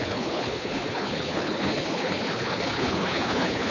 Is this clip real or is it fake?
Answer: fake